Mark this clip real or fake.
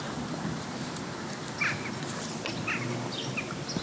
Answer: real